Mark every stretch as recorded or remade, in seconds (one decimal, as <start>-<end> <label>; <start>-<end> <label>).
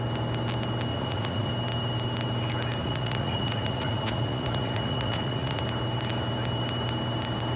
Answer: 0.0-0.9 recorded; 0.9-1.5 remade; 1.5-2.8 recorded; 2.8-5.6 remade; 5.6-7.6 recorded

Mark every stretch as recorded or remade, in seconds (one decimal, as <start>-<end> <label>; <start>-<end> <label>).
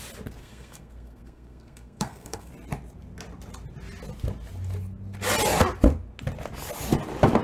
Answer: 0.0-0.4 recorded; 0.4-2.5 remade; 2.5-7.4 recorded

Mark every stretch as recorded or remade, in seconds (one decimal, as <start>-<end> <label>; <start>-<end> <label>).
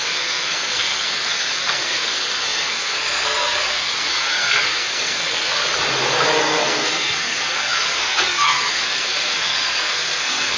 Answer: 0.0-5.6 remade; 5.6-6.4 recorded; 6.4-10.6 remade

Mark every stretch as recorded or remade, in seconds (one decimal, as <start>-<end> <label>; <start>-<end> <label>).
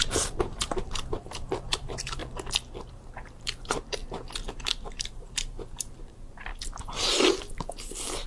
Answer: 0.0-2.2 remade; 2.2-2.9 recorded; 2.9-4.0 remade; 4.0-4.5 recorded; 4.5-6.5 remade; 6.5-8.3 recorded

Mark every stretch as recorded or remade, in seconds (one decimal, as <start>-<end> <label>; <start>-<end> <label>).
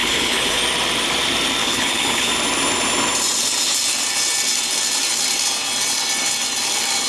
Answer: 0.0-0.6 remade; 0.6-1.6 recorded; 1.6-2.3 remade; 2.3-7.1 recorded